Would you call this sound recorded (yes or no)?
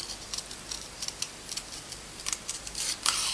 no